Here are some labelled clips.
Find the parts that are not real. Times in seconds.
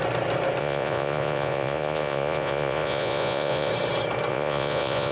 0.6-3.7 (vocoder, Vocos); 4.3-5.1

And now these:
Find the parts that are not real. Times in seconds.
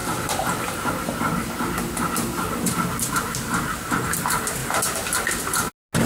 none